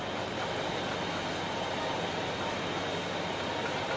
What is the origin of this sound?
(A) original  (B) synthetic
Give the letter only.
A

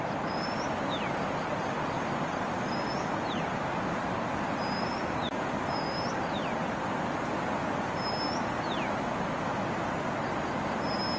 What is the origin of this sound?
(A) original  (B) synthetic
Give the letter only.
A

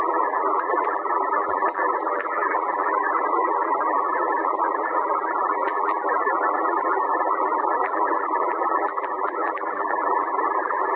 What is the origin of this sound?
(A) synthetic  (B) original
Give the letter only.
A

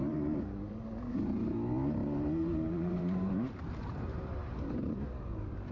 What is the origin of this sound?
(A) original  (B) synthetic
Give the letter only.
B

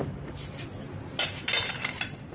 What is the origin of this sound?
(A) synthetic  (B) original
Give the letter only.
B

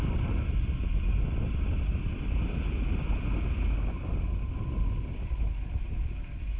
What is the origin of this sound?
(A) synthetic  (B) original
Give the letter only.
B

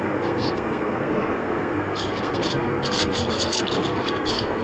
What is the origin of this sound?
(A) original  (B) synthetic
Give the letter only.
B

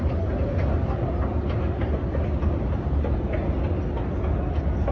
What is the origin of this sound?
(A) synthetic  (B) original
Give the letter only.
B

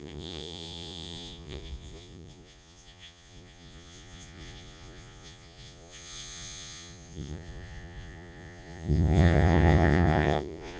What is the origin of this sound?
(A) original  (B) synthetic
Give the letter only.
B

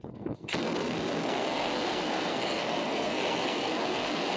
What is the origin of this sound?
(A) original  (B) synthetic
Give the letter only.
B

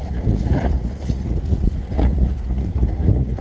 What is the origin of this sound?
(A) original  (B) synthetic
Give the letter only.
B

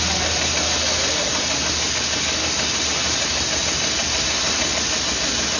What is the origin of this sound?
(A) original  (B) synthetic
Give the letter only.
A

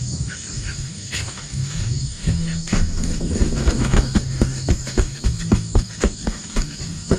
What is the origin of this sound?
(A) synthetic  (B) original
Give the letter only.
A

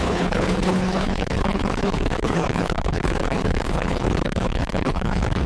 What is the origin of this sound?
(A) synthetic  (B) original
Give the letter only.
A